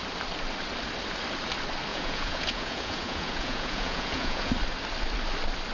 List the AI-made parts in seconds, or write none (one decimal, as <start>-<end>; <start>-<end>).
1.9-4.5